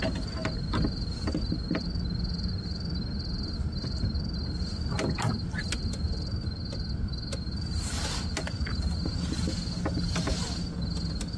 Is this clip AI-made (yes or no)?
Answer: no